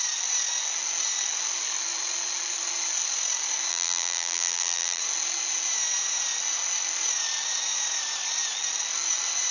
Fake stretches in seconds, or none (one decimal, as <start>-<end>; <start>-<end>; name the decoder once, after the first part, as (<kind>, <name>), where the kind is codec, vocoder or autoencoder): 3.7-5.0 (vocoder, BigVGAN v2)